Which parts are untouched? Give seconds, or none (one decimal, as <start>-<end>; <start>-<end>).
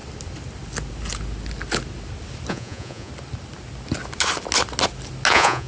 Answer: 0.0-2.5; 3.1-5.3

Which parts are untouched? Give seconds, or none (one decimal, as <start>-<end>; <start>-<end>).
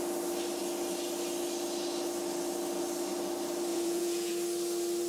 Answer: 0.0-3.7; 4.3-5.1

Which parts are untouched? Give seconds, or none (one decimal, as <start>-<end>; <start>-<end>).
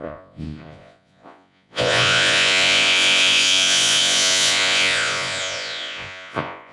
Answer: none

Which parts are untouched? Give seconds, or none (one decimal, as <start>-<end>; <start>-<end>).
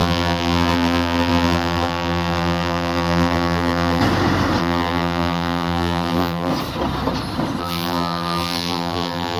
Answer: 4.0-4.6; 6.5-7.6